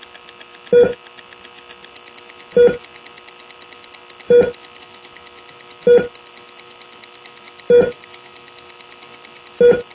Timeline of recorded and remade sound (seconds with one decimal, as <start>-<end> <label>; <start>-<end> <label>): 0.0-9.9 recorded